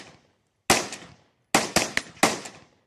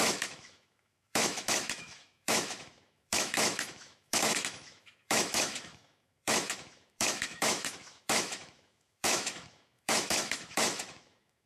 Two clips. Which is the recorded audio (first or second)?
first